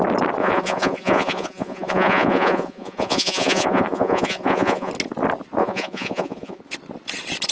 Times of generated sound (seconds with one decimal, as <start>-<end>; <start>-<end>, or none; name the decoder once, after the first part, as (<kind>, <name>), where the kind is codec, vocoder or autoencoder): 0.4-4.9 (vocoder, Vocos); 5.6-6.6